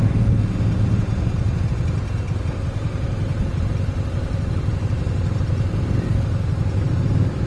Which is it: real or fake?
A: real